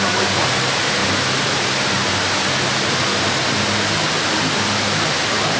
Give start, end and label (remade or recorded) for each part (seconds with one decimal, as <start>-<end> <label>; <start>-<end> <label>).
0.0-1.0 remade; 1.0-4.4 recorded; 4.4-5.6 remade